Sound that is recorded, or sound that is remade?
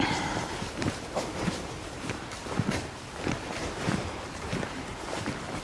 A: remade